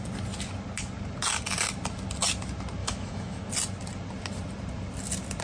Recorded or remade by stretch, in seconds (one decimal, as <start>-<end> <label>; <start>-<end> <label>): 0.0-2.8 recorded; 2.8-3.4 remade; 3.4-5.4 recorded

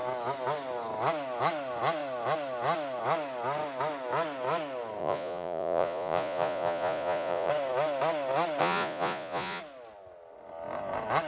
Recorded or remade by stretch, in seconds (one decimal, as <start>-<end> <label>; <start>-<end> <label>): 0.0-5.0 recorded; 5.0-7.5 remade; 7.5-8.6 recorded; 8.6-9.6 remade; 9.6-11.3 recorded

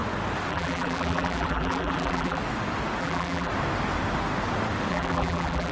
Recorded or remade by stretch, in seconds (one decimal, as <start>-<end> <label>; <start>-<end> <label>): 0.0-0.5 recorded; 0.5-2.4 remade; 2.4-3.0 recorded; 3.0-3.5 remade; 3.5-4.9 recorded; 4.9-5.7 remade

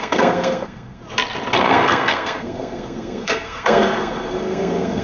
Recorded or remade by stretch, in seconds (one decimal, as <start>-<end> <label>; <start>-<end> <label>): 0.0-1.0 remade; 1.0-1.6 recorded; 1.6-5.0 remade

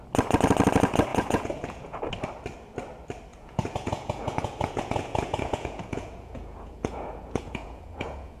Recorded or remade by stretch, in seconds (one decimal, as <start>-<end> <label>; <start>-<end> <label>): 0.0-1.1 recorded; 1.1-2.0 remade; 2.0-3.3 recorded; 3.3-8.4 remade